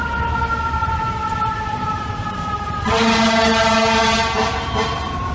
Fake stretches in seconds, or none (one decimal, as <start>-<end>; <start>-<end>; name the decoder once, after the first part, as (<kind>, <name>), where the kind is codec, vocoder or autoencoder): 0.8-4.0 (vocoder, BigVGAN v2)